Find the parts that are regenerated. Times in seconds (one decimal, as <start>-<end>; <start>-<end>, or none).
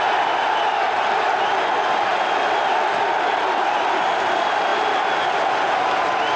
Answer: none